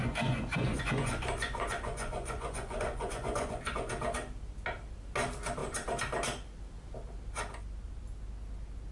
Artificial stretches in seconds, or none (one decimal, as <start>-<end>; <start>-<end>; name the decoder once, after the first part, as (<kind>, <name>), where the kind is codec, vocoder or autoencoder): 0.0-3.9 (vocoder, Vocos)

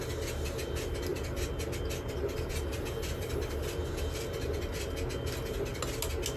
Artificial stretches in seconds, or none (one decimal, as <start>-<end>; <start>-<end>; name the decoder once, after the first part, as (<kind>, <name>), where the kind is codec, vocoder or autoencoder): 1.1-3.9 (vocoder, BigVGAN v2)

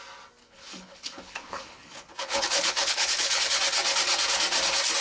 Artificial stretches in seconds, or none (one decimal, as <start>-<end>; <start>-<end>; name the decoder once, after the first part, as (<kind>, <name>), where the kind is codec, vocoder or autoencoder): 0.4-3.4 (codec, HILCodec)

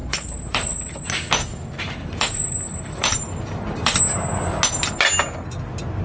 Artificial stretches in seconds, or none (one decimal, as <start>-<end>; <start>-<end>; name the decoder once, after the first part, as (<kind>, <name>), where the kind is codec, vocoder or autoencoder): 0.0-1.0 (vocoder, BigVGAN v2); 2.0-4.0